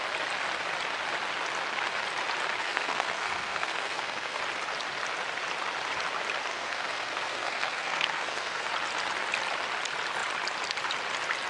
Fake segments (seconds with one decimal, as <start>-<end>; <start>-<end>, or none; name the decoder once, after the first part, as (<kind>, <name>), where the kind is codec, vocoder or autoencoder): 2.6-4.4 (codec, SNAC); 6.5-8.7